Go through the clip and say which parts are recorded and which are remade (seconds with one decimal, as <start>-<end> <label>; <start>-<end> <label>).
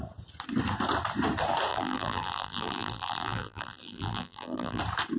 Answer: 0.0-1.7 recorded; 1.7-4.8 remade; 4.8-5.2 recorded